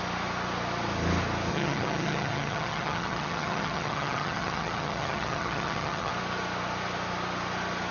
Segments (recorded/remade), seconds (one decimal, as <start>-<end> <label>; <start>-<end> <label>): 0.0-1.5 recorded; 1.5-6.1 remade; 6.1-7.9 recorded